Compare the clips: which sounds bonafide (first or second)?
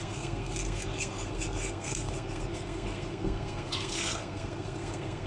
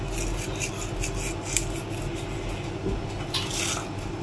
second